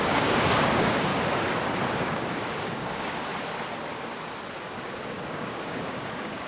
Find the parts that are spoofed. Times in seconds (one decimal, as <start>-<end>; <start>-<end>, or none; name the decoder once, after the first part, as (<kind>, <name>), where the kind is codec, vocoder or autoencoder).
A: 0.0-1.1 (codec, DAC); 1.9-3.3; 4.7-6.5